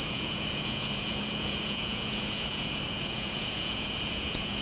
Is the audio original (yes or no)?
no